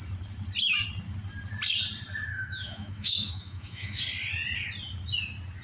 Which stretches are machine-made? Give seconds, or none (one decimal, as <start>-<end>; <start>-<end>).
2.3-4.0